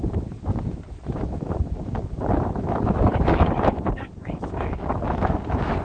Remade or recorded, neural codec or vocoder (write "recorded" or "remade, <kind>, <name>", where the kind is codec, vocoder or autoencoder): remade, autoencoder, DAC-VAE